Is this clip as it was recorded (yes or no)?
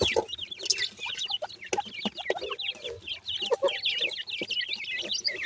yes